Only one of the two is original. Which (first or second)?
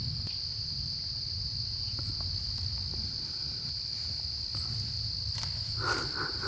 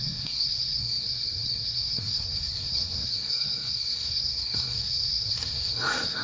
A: first